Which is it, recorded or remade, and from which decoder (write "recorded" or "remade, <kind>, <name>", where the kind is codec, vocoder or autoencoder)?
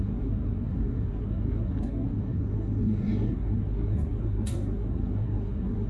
remade, codec, SNAC